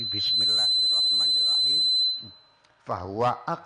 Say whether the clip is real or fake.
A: real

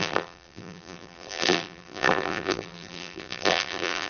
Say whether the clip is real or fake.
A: fake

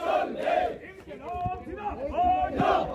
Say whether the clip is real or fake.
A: fake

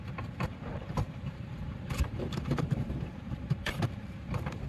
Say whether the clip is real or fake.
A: fake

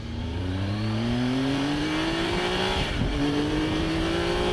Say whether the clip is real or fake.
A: fake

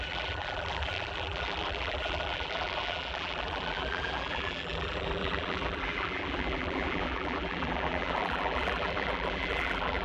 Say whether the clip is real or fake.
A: fake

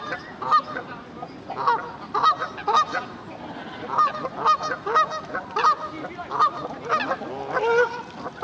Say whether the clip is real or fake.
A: real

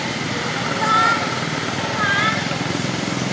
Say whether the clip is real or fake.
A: fake